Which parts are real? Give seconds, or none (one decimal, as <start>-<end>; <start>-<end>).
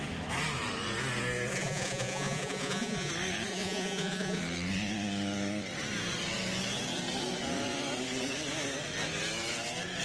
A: 0.0-1.5; 3.1-3.5; 4.4-10.0